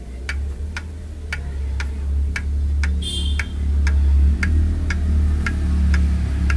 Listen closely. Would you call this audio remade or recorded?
recorded